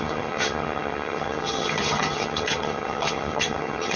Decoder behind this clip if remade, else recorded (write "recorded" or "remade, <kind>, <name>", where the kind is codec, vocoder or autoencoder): remade, vocoder, HiFi-GAN